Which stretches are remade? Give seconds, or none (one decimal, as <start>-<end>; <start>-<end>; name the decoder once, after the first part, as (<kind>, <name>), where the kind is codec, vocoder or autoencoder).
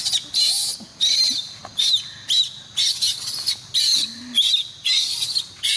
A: none